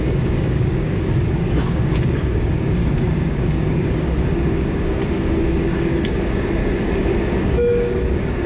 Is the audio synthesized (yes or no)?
yes